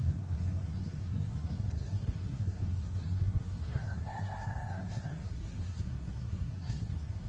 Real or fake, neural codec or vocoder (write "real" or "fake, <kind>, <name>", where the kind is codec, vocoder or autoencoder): fake, codec, SNAC